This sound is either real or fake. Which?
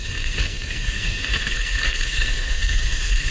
fake